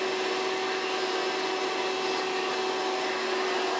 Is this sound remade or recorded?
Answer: recorded